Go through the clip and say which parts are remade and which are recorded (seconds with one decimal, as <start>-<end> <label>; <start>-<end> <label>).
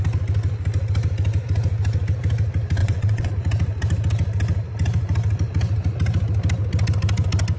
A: 0.0-2.8 recorded; 2.8-3.3 remade; 3.3-7.6 recorded